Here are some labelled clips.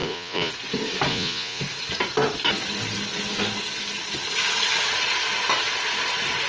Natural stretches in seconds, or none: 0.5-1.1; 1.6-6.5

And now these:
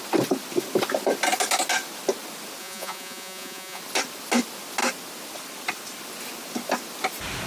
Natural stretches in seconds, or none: 0.0-2.6; 3.8-7.5

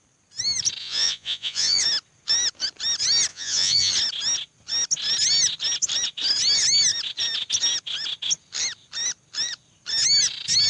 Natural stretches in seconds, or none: 0.0-0.8; 1.8-3.3; 3.9-10.7

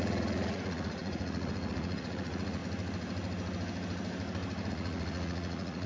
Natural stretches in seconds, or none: 2.6-4.7

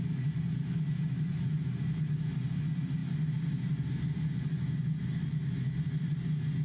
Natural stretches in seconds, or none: 0.0-6.6

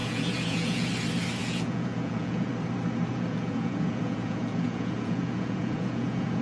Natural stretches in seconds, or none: 0.9-1.4; 2.5-3.1